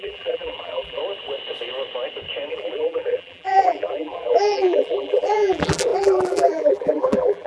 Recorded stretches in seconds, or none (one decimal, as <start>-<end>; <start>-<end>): 1.0-2.5